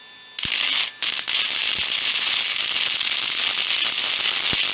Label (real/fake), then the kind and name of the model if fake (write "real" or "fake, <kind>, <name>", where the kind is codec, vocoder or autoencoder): real